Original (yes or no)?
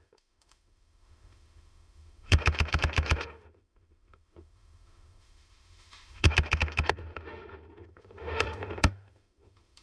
no